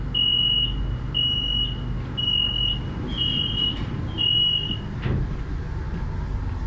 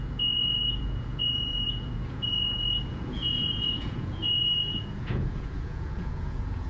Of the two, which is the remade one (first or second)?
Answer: second